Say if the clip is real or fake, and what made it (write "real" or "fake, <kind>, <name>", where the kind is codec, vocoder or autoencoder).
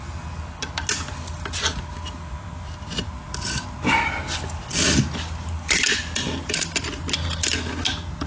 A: real